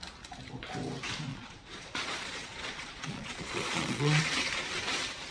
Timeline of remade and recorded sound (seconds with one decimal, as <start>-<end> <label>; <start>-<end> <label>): 0.0-1.3 recorded; 1.3-4.5 remade; 4.5-5.3 recorded